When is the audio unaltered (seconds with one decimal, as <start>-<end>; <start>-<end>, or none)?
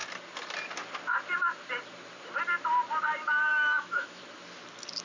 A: 0.0-3.5; 4.2-5.0